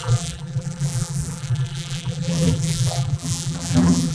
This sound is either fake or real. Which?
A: fake